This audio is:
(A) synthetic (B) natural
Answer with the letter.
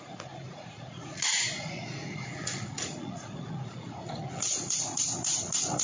A